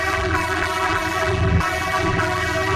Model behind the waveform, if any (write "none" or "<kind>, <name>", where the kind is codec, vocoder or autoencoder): vocoder, BigVGAN v2